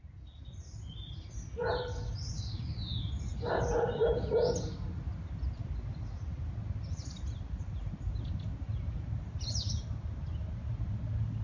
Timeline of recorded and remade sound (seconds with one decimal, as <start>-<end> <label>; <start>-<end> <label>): 0.0-11.4 recorded